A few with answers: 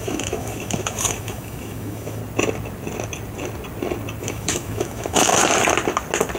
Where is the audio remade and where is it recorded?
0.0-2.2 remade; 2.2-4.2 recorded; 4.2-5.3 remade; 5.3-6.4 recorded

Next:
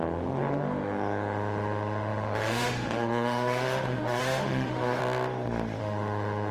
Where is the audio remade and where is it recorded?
0.0-5.0 remade; 5.0-5.8 recorded; 5.8-6.5 remade